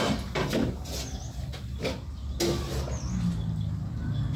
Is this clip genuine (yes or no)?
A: yes